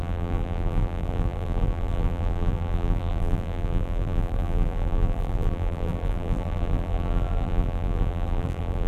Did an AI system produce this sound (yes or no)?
yes